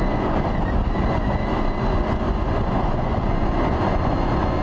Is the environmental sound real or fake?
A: fake